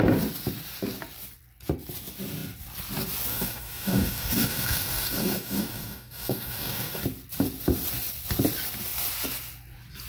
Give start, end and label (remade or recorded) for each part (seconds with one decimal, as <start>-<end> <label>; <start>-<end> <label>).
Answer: 0.0-3.3 recorded; 3.3-7.0 remade; 7.0-10.1 recorded